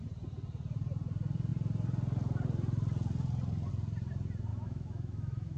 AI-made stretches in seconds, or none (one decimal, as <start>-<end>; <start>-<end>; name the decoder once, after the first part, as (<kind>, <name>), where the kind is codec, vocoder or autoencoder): 4.5-5.6 (autoencoder, DAC-VAE)